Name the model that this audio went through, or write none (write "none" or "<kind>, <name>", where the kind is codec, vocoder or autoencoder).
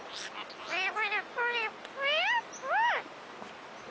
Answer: none